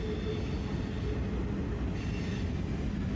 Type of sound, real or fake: real